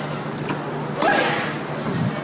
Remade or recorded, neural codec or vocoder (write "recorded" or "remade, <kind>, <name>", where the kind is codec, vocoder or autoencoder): recorded